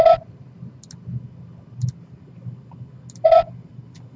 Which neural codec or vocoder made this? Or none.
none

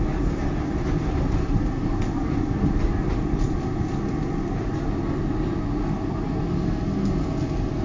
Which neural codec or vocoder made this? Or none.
none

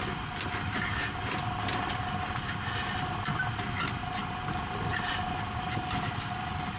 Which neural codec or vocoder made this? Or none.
none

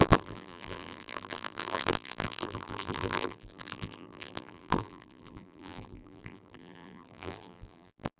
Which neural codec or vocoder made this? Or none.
vocoder, BigVGAN v2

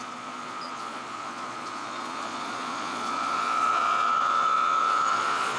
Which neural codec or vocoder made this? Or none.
vocoder, Vocos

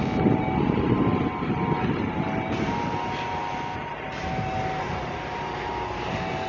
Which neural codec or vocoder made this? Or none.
none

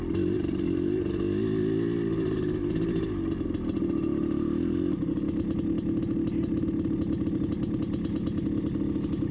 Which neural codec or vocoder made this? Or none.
none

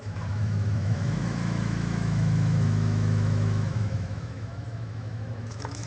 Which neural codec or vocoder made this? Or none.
autoencoder, DAC-VAE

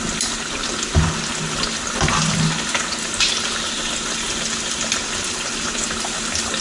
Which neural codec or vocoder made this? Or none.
none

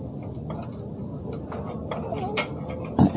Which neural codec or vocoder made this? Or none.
none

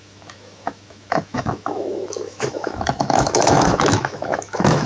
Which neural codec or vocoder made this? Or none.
autoencoder, DAC-VAE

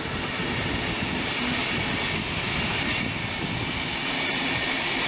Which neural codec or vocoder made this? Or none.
none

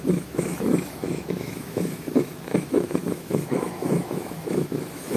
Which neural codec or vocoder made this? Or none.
autoencoder, DAC-VAE